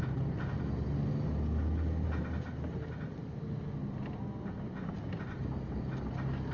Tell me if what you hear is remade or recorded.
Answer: recorded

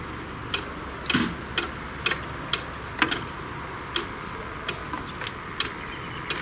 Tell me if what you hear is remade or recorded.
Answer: recorded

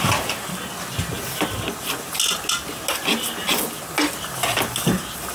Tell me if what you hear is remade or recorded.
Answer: recorded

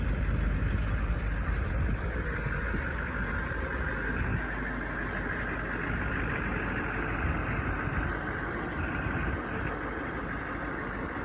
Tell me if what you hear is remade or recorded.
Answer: recorded